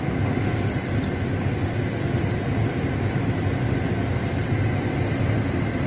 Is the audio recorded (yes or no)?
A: yes